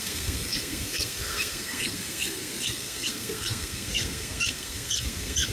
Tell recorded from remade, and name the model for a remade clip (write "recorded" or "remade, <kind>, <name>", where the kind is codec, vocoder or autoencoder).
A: remade, codec, SNAC